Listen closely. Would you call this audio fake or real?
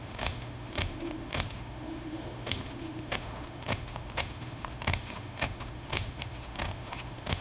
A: fake